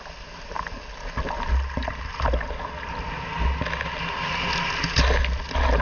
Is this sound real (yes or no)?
yes